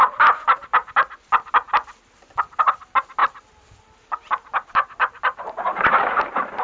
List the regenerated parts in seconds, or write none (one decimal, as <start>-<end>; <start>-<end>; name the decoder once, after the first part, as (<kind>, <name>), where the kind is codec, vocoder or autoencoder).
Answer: 0.0-6.6 (vocoder, BigVGAN v2)